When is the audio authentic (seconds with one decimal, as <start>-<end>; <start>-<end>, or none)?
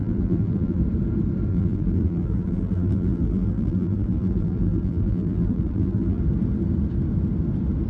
0.8-1.5; 6.2-7.9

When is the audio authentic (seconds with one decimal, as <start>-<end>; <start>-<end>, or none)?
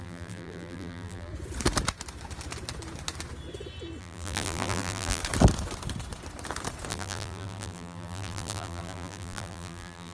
1.3-4.0; 5.2-6.9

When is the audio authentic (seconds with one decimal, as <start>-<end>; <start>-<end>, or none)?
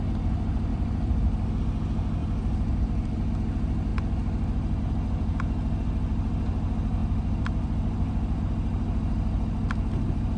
0.0-0.7; 1.6-2.2; 3.3-7.0; 8.4-10.4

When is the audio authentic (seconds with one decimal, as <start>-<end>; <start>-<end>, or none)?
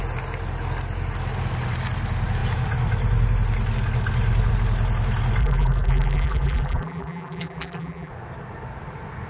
0.0-5.4; 8.1-9.3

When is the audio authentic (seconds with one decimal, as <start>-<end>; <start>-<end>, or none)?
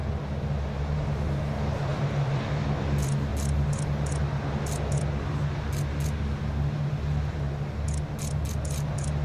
0.0-1.9; 2.4-9.2